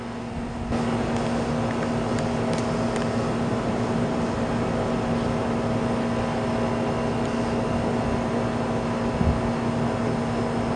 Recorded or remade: recorded